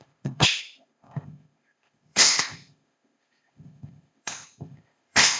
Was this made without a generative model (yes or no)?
no